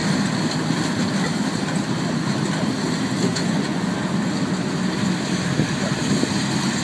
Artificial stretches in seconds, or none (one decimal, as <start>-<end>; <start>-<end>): 3.3-3.9